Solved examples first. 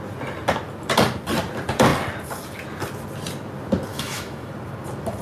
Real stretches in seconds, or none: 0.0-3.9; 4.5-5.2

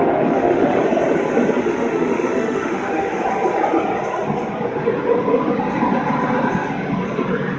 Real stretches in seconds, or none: 0.8-1.6; 3.1-7.6

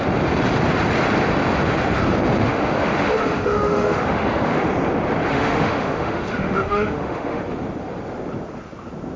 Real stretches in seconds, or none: 0.0-2.4; 4.7-5.3; 7.4-9.2

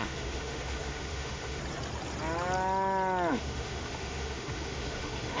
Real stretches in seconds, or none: 1.6-3.3

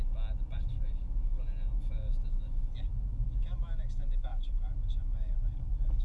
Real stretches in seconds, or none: 0.0-6.0

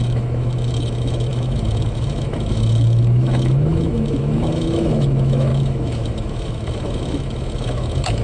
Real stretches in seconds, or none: none

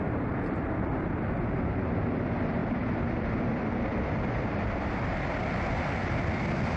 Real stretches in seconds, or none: 0.0-6.8